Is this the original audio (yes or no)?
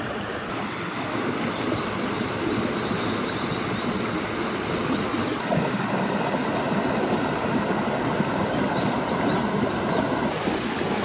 yes